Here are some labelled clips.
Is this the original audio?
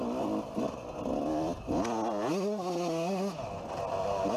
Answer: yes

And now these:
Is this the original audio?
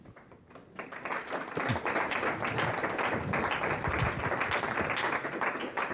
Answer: yes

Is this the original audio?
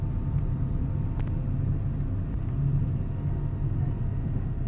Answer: yes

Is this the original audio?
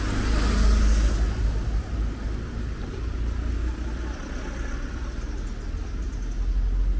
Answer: yes